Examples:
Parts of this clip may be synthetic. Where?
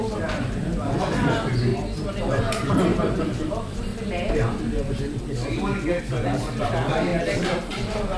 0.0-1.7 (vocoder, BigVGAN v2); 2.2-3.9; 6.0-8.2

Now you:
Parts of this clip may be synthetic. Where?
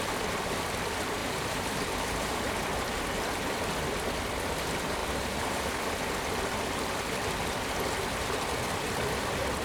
1.2-2.5 (vocoder, BigVGAN v2); 5.0-5.6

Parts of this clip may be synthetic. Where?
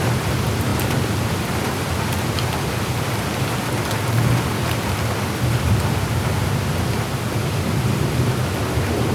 none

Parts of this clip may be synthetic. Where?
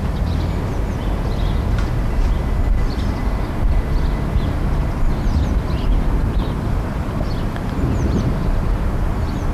none